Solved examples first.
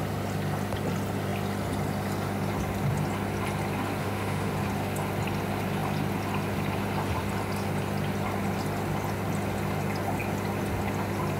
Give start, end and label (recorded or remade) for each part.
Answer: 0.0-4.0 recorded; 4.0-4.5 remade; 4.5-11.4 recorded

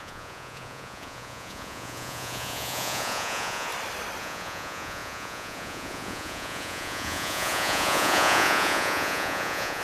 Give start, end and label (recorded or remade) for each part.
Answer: 0.0-3.7 remade; 3.7-4.2 recorded; 4.2-9.8 remade

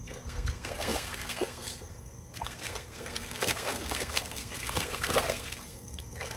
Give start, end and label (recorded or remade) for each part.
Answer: 0.0-6.4 remade